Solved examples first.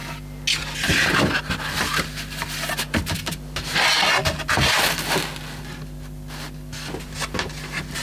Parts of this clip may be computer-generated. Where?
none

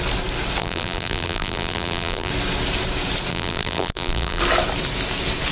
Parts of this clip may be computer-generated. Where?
0.6-2.3 (vocoder, BigVGAN v2); 3.3-4.4

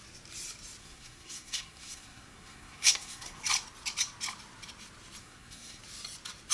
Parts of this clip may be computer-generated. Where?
0.8-3.4 (codec, SNAC); 5.2-5.8

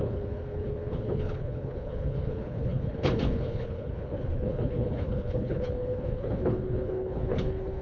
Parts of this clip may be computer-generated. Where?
0.0-7.8 (codec, HILCodec)

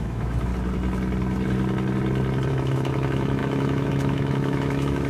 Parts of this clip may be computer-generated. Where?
0.0-0.5 (autoencoder, DAC-VAE); 2.5-5.1

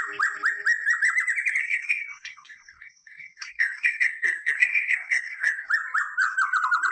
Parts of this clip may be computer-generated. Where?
1.6-5.7 (codec, SNAC)

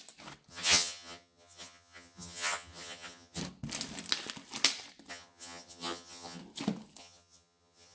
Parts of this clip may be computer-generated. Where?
0.5-3.4 (vocoder, HiFi-GAN); 5.1-6.4; 7.0-7.9

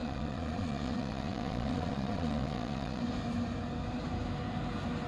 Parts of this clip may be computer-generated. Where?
0.0-3.0 (vocoder, Vocos)